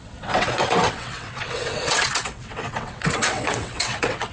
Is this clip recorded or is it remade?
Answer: remade